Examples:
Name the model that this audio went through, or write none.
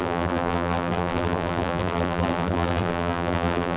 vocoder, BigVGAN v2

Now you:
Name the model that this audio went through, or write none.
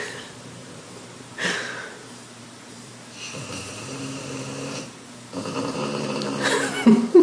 vocoder, BigVGAN v2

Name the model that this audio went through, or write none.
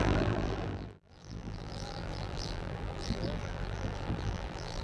vocoder, BigVGAN v2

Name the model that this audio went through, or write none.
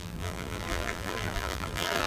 vocoder, BigVGAN v2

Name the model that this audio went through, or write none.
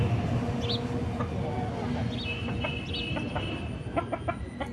none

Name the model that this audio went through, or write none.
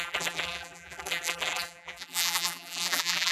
vocoder, BigVGAN v2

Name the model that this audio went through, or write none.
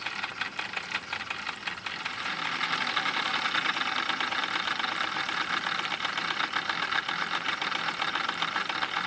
vocoder, BigVGAN v2